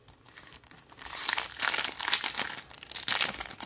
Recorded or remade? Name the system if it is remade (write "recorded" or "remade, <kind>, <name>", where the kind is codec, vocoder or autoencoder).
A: recorded